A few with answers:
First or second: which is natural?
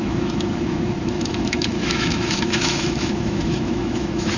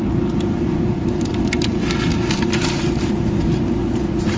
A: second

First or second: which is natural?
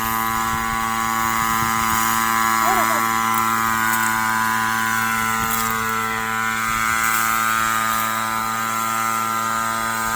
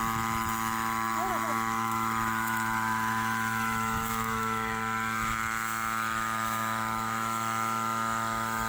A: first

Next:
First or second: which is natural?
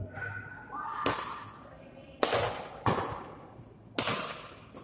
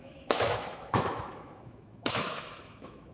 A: first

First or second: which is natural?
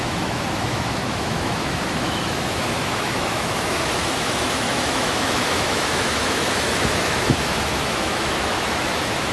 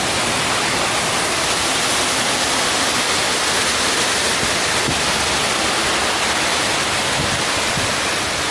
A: second